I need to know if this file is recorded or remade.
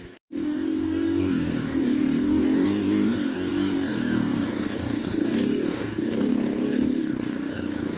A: remade